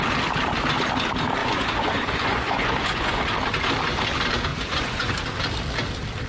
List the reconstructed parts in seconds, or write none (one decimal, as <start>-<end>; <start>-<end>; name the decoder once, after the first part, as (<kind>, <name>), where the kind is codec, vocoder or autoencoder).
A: 1.4-3.2 (vocoder, Vocos); 4.5-5.2